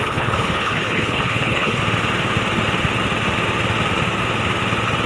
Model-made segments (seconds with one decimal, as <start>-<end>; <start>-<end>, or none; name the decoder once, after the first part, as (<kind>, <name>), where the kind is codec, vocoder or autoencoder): 0.0-1.8 (codec, HILCodec)